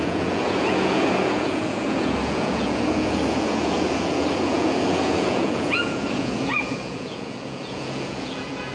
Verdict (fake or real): fake